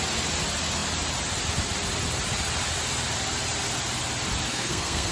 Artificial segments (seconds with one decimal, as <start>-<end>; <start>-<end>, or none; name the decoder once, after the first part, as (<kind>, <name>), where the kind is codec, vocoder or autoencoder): 4.5-5.1 (codec, SNAC)